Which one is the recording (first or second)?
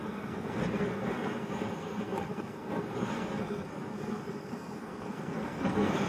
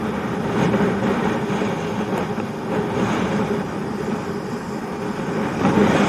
second